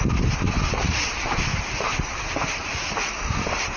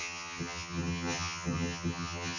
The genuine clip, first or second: first